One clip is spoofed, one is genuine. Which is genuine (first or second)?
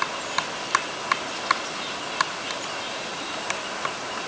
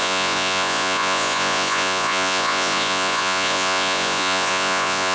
first